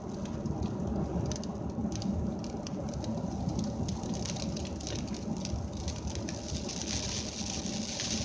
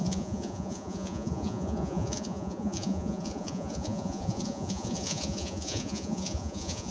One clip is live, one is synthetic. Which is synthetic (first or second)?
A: second